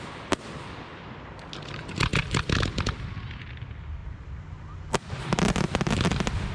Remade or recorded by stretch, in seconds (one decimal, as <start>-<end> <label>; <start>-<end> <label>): 0.0-6.5 recorded